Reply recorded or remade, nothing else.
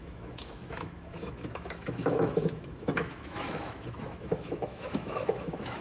remade